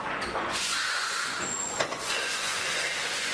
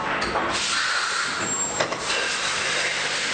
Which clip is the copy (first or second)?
first